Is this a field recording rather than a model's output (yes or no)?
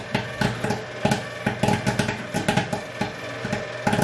yes